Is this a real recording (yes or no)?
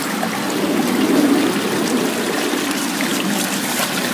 yes